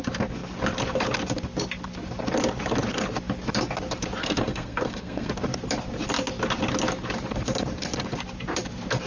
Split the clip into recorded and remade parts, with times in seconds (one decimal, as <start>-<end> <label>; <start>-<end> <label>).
0.0-4.2 recorded; 4.2-5.3 remade; 5.3-9.1 recorded